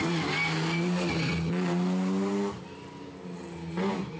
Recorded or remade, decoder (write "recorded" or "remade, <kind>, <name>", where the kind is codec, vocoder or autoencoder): recorded